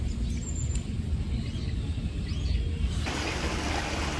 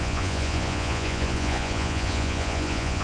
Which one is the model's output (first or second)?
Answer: second